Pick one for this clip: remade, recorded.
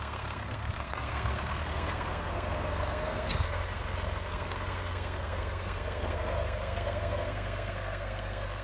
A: remade